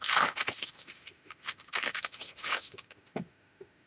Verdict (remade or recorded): remade